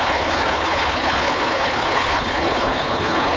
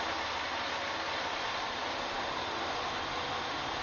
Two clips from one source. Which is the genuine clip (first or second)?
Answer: second